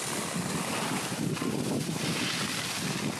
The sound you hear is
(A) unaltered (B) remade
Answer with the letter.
A